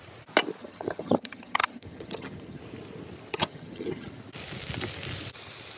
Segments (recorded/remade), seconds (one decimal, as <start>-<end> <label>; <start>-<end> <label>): 0.0-0.6 recorded; 0.6-2.6 remade; 2.6-3.3 recorded; 3.3-4.1 remade; 4.1-5.8 recorded